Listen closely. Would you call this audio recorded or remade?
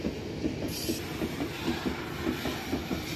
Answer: recorded